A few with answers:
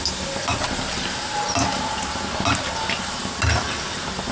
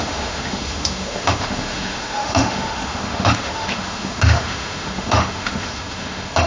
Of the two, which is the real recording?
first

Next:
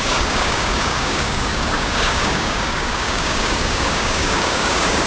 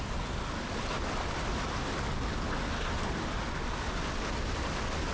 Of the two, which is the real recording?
second